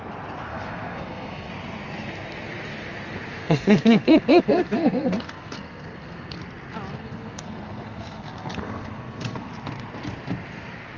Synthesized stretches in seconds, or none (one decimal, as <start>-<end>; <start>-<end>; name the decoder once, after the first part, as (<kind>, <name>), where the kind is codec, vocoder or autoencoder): 0.5-1.5 (codec, SNAC); 3.4-6.4; 6.9-9.5